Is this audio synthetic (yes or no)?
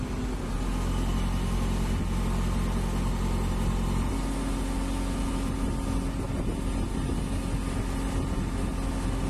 no